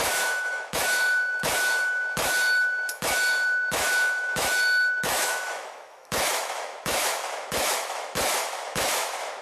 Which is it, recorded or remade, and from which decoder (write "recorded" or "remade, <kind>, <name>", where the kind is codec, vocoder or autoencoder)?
remade, autoencoder, DAC-VAE